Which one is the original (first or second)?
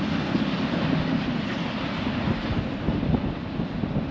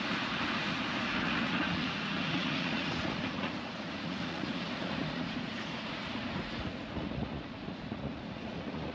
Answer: first